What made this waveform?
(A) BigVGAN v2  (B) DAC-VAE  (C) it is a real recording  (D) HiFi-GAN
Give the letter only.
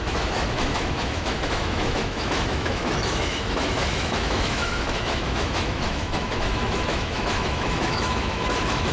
B